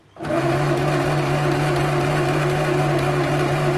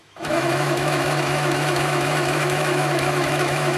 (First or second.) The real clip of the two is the first